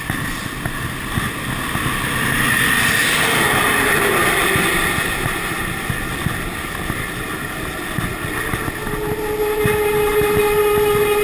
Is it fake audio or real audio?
real